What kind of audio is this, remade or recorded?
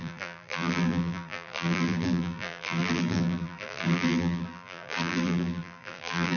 remade